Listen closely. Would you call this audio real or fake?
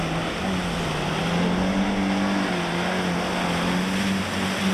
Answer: real